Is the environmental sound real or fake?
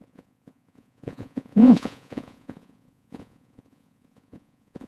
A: fake